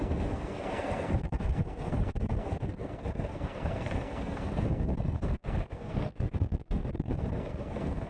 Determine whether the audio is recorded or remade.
remade